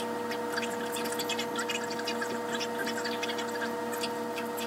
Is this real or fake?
real